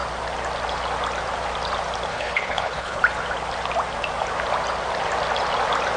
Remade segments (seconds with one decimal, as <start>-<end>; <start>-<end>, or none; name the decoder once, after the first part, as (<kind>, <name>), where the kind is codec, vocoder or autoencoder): 2.1-3.0 (codec, HILCodec)